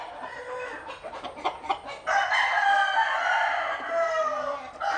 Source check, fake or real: real